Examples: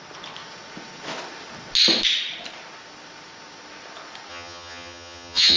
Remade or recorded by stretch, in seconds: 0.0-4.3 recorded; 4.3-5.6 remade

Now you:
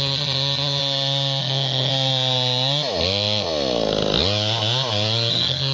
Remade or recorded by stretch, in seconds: 0.0-0.8 remade; 0.8-1.4 recorded; 1.4-1.9 remade; 1.9-5.3 recorded; 5.3-5.7 remade